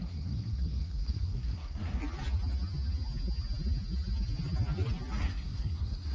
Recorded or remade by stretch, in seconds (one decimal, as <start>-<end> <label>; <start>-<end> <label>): 0.0-2.0 remade; 2.0-5.2 recorded; 5.2-6.1 remade

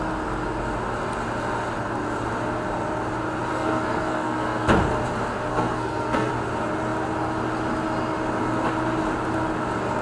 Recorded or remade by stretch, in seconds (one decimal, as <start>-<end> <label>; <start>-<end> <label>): 0.0-3.5 recorded; 3.5-4.7 remade; 4.7-5.5 recorded; 5.5-6.3 remade; 6.3-10.0 recorded

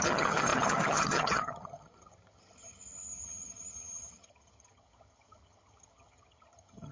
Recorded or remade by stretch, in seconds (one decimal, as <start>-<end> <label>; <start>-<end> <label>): 0.0-6.9 remade

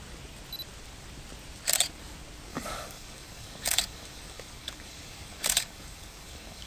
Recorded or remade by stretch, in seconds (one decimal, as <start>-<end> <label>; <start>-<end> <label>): 0.0-2.5 recorded; 2.5-6.7 remade

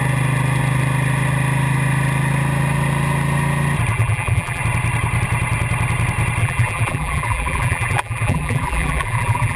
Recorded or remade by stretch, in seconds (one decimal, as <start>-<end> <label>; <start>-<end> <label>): 0.0-3.9 recorded; 3.9-4.6 remade; 4.6-6.4 recorded; 6.4-9.6 remade

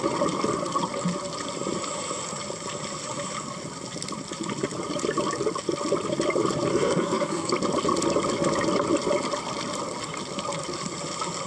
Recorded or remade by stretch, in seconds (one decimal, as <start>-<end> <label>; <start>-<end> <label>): 0.0-6.7 recorded; 6.7-7.5 remade; 7.5-11.5 recorded